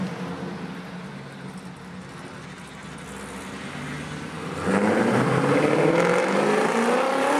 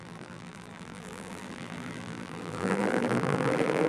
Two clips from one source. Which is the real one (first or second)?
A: first